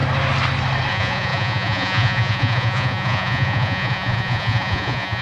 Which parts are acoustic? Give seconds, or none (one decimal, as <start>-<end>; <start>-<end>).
0.0-0.9